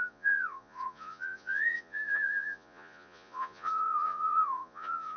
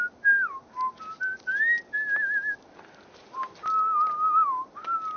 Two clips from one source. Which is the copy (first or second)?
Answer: first